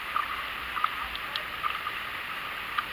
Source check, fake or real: real